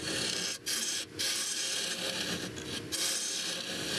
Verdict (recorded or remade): recorded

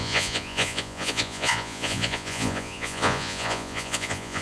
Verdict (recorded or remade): remade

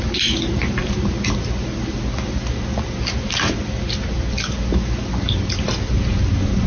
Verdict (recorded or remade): recorded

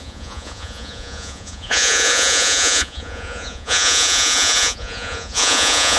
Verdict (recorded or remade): remade